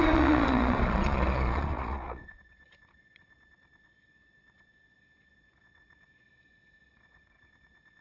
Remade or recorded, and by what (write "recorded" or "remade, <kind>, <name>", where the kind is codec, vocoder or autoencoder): remade, vocoder, Vocos